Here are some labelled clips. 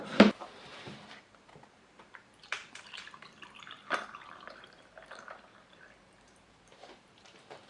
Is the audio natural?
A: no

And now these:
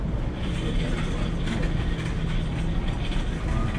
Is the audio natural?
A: yes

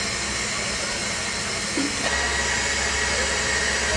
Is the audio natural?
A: yes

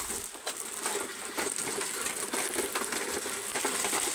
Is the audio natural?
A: yes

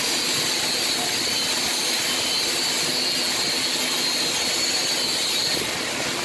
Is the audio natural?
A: yes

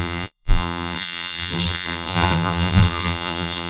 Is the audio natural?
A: no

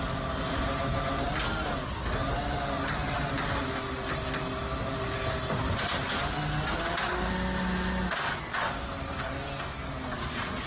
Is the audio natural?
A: yes